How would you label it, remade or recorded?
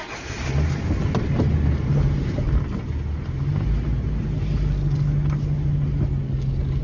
recorded